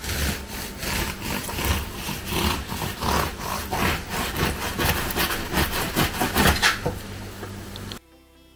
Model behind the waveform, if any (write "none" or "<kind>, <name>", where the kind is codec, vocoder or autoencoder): none